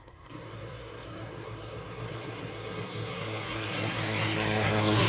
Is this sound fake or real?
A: fake